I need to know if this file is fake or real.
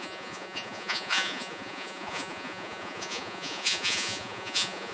fake